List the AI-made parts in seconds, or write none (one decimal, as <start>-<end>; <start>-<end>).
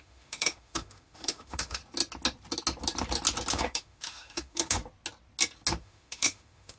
0.0-1.8; 3.5-4.8; 5.8-6.8